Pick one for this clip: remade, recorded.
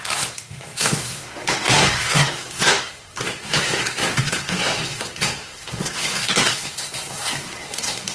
remade